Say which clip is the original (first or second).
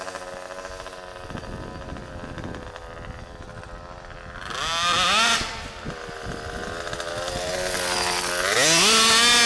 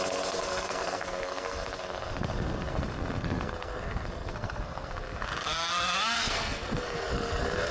first